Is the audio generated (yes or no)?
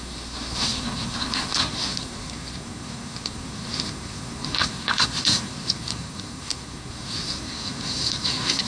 yes